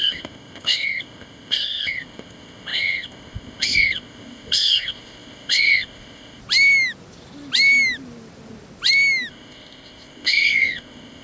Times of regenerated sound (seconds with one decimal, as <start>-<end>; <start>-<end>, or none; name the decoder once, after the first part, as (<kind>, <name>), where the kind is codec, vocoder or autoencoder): 0.0-6.4 (codec, ZipCodec); 9.3-11.2